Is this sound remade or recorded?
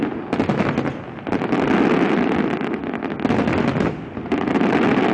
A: recorded